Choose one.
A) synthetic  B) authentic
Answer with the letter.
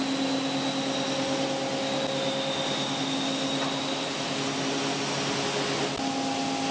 B